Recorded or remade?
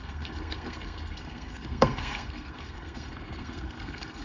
remade